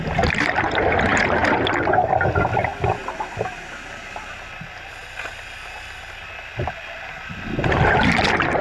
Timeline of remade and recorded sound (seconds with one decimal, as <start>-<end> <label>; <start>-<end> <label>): 0.0-8.6 recorded